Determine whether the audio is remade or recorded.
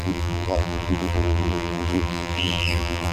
remade